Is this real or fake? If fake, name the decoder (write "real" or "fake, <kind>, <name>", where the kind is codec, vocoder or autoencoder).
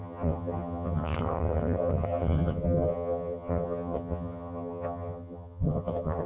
fake, vocoder, HiFi-GAN